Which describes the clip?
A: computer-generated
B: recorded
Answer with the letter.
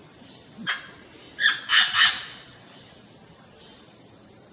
B